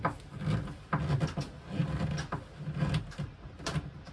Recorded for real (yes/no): yes